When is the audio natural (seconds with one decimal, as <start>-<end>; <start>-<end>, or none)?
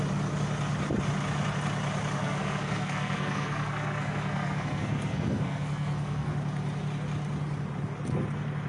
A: 0.0-2.2; 6.3-8.7